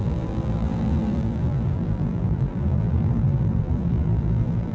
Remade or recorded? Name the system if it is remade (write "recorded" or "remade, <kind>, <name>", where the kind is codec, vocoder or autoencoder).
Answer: remade, vocoder, BigVGAN v2